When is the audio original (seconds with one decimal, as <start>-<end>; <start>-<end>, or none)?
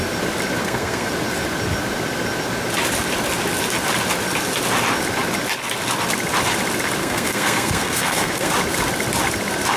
0.0-0.6; 1.1-7.0; 8.5-9.8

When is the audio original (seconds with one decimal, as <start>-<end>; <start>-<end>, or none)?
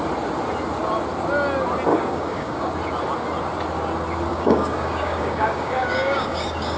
0.0-1.9; 2.7-4.3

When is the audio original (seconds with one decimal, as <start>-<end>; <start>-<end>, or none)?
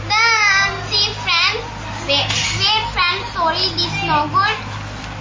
0.0-5.2